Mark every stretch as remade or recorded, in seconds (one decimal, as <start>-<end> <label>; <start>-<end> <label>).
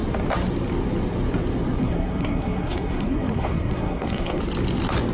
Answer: 0.0-1.8 recorded; 1.8-4.4 remade; 4.4-5.1 recorded